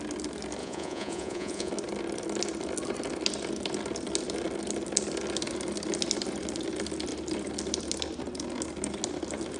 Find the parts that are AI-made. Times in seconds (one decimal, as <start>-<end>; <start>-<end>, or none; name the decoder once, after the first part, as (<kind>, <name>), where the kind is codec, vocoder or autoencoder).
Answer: 0.6-1.7 (vocoder, Vocos)

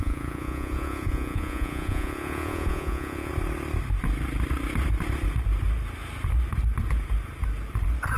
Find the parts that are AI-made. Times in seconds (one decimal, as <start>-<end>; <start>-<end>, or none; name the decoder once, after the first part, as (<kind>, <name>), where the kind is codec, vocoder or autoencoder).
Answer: 0.0-3.3 (vocoder, Vocos)

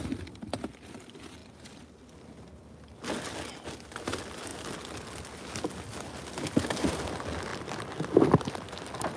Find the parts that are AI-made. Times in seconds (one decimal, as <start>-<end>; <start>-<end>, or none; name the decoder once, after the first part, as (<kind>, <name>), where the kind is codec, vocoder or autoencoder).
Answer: none

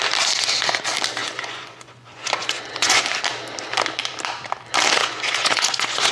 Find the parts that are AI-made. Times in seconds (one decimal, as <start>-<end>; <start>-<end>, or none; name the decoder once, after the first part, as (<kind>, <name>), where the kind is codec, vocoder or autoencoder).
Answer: 1.2-3.0 (vocoder, Vocos); 5.0-6.1